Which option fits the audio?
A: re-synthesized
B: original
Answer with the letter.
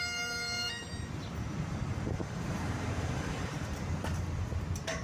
A